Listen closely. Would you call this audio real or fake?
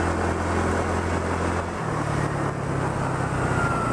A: real